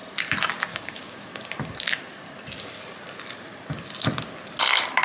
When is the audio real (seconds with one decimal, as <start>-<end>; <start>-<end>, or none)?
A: 0.0-0.7; 1.3-5.0